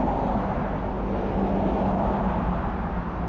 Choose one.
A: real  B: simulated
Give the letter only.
A